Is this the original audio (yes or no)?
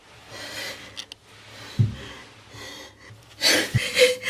yes